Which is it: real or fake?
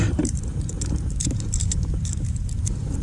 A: fake